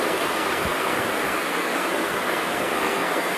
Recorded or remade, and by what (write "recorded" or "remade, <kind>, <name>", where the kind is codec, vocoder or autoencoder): remade, codec, SNAC